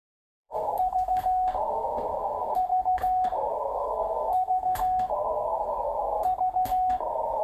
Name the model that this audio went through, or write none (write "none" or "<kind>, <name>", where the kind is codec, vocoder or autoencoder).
codec, SNAC